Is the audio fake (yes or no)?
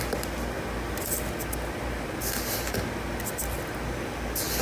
no